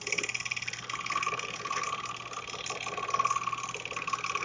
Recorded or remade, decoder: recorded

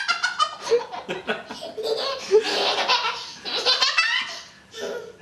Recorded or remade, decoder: recorded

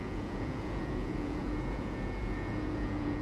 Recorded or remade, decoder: remade, vocoder, Vocos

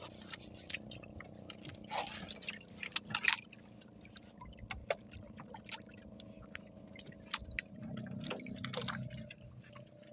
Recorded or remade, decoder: recorded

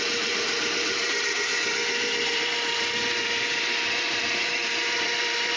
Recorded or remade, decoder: remade, vocoder, BigVGAN v2